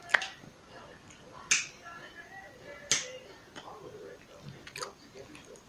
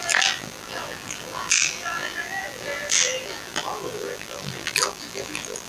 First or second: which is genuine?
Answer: first